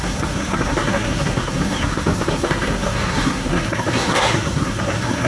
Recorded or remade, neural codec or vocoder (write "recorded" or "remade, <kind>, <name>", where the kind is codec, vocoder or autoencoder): remade, codec, SNAC